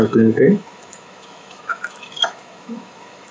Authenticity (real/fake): fake